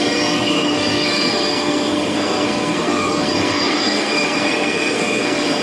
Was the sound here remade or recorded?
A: remade